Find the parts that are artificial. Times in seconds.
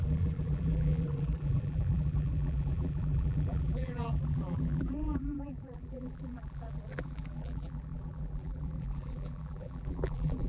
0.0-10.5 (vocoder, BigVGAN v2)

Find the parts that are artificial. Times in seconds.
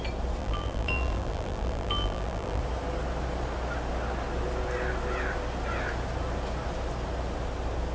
0.4-2.6 (vocoder, BigVGAN v2)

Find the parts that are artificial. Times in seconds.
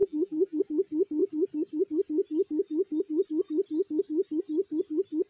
0.0-0.6 (vocoder, BigVGAN v2)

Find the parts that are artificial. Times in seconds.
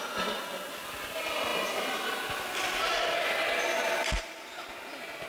none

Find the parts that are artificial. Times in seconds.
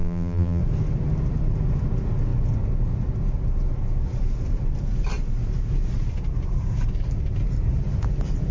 0.0-0.6 (vocoder, BigVGAN v2)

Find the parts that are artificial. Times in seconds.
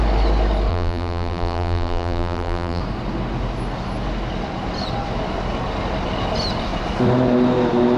0.7-2.8 (vocoder, BigVGAN v2)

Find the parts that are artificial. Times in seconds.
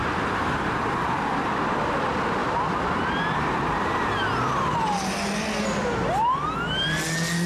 0.0-0.7 (vocoder, BigVGAN v2); 2.4-4.5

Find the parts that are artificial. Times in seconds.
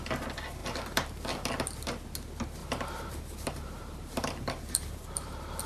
0.6-1.5 (vocoder, BigVGAN v2); 2.6-5.7